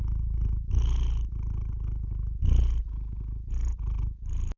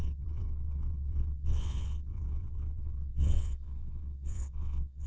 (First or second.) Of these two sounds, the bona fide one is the first